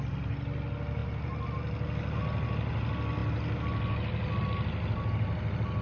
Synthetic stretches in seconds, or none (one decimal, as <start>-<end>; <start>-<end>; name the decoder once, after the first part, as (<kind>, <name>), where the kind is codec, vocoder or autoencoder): none